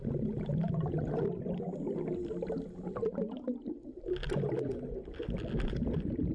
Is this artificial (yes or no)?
no